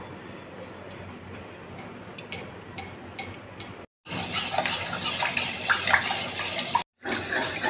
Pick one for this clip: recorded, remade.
recorded